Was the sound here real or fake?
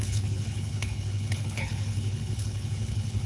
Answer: fake